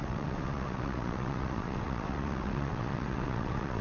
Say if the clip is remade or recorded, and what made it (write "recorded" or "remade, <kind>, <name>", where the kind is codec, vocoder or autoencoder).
remade, vocoder, WaveNeXt